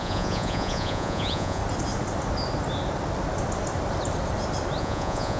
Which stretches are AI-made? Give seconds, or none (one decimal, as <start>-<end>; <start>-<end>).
0.0-1.6; 4.8-5.4